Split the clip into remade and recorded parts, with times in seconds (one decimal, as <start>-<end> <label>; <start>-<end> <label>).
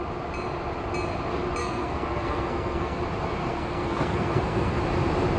0.0-1.6 recorded; 1.6-3.0 remade; 3.0-3.4 recorded; 3.4-4.8 remade; 4.8-5.4 recorded